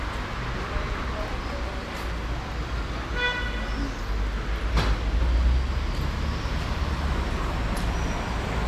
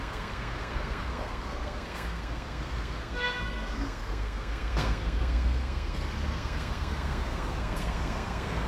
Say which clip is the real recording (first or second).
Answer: first